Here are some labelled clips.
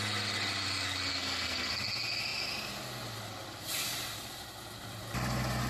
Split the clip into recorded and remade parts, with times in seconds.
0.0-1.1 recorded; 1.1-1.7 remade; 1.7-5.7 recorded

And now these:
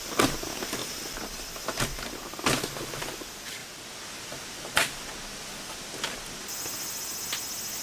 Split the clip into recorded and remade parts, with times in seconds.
0.0-7.8 recorded

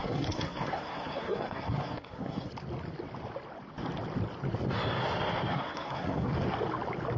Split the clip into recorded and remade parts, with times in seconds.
0.0-2.5 remade; 2.5-5.5 recorded; 5.5-6.3 remade; 6.3-7.2 recorded

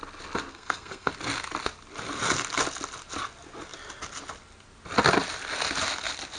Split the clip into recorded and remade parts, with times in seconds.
0.0-0.5 recorded; 0.5-1.1 remade; 1.1-6.4 recorded

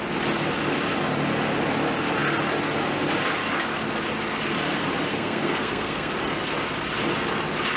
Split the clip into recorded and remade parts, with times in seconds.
0.0-5.1 recorded; 5.1-6.1 remade; 6.1-7.8 recorded

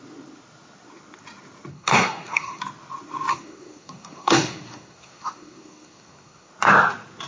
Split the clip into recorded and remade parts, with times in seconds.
0.0-1.7 recorded; 1.7-2.6 remade; 2.6-3.3 recorded; 3.3-6.5 remade; 6.5-7.3 recorded

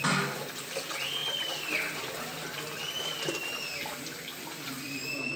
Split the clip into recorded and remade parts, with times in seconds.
0.0-5.4 recorded